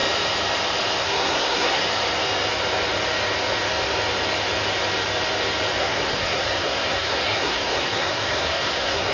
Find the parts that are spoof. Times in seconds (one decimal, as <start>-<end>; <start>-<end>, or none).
1.0-1.8; 5.8-9.1